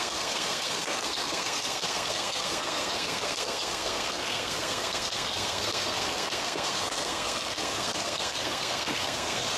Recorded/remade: remade